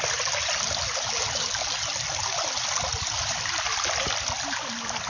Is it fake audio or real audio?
real